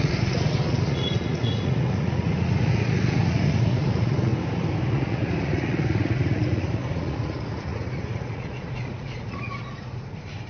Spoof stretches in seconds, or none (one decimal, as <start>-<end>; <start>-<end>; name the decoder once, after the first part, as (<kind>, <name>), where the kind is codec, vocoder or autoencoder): 0.0-4.3 (vocoder, Vocos); 4.9-10.5